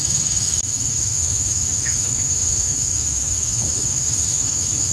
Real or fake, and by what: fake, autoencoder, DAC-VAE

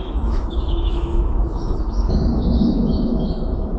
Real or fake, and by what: fake, autoencoder, DAC-VAE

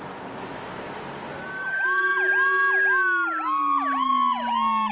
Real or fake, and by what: real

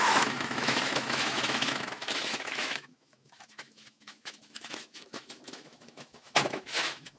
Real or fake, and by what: fake, autoencoder, DAC-VAE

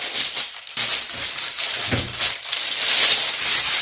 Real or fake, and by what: real